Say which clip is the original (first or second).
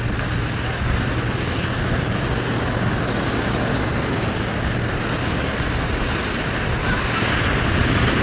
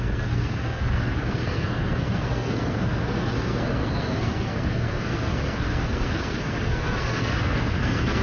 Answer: first